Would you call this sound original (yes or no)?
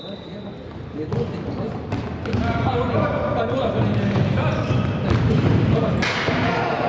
yes